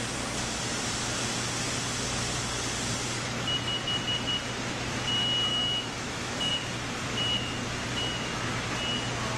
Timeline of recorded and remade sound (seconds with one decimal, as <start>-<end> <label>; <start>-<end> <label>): 0.0-5.5 recorded; 5.5-6.5 remade; 6.5-9.4 recorded